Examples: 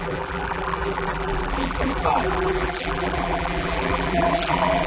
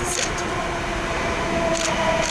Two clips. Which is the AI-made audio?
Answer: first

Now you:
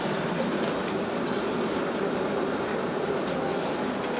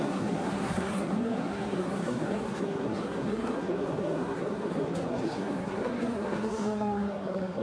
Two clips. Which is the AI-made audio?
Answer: second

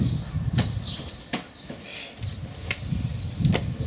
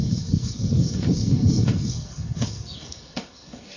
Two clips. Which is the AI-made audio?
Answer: second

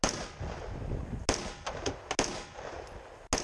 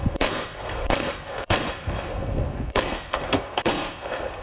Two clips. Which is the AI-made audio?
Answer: second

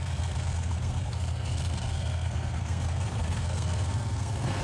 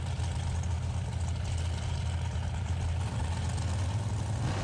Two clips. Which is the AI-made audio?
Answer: first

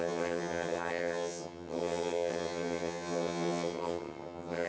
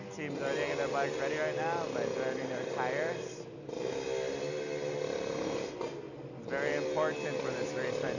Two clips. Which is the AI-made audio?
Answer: first